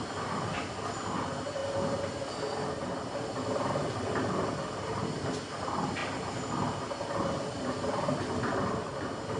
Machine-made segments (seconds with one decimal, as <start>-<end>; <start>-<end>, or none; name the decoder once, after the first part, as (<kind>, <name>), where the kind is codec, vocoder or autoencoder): none

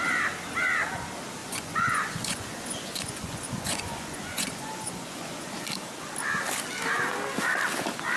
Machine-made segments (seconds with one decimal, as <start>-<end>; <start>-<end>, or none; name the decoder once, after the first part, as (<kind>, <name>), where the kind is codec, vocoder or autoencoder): 1.4-5.6 (vocoder, Vocos)

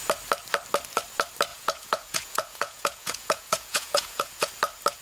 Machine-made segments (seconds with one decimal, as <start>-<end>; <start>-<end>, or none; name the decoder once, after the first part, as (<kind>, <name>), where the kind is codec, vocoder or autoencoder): 1.5-4.5 (vocoder, Vocos)